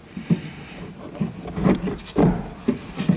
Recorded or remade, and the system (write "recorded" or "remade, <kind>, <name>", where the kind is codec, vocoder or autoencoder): recorded